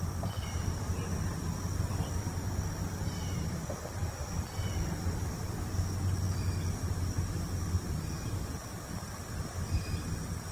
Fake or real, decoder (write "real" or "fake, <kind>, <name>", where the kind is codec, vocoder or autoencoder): real